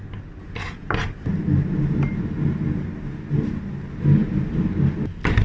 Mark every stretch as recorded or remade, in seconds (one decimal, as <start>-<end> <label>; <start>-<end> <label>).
0.0-5.4 recorded